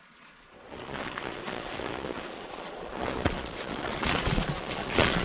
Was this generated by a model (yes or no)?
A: yes